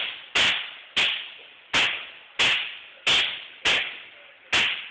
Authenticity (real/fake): real